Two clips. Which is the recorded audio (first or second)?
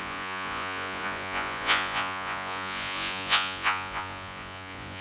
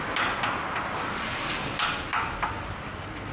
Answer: second